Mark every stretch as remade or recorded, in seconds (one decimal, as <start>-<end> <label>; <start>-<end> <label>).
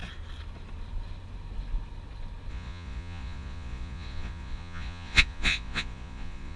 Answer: 0.0-2.5 recorded; 2.5-6.6 remade